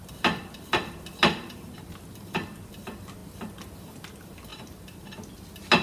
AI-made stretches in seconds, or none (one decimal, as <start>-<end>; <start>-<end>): none

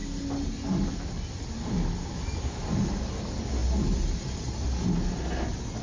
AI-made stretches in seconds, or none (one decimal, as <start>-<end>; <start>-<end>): none

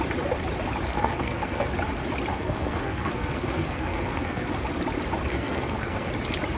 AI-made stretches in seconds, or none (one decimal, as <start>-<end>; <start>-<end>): 0.9-1.7; 2.3-4.5; 5.3-6.1